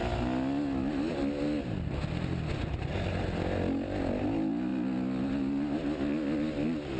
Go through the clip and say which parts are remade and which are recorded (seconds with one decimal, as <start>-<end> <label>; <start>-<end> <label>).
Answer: 0.0-7.0 recorded